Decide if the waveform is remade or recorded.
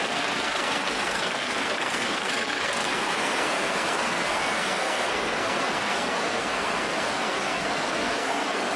remade